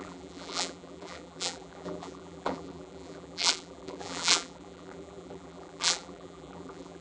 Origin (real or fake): fake